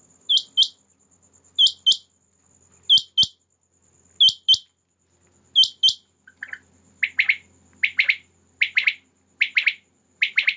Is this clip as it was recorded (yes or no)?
yes